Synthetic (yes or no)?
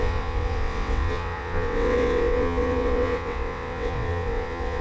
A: yes